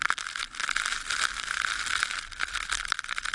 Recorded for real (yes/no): yes